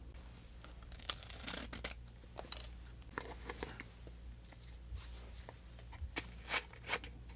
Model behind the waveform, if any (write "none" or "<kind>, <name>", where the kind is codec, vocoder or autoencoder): none